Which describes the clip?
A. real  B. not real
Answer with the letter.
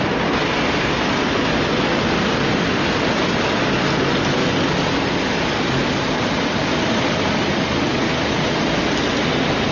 A